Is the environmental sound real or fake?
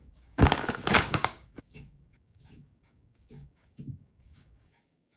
fake